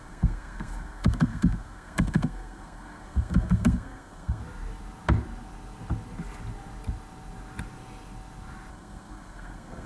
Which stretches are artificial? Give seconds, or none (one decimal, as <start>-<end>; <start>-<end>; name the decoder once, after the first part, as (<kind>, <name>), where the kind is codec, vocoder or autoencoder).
0.0-4.4 (codec, SNAC); 8.7-9.9